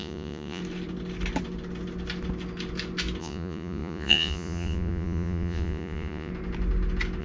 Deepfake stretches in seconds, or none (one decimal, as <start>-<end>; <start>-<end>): 0.0-0.6; 3.2-6.3